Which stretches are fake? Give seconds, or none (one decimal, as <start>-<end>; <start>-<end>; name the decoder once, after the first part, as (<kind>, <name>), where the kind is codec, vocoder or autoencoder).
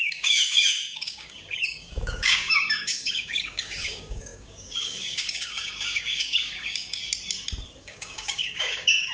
0.0-7.0 (codec, DAC); 7.8-9.1